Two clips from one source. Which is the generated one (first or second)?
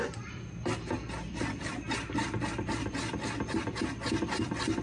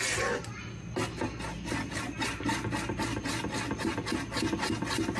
first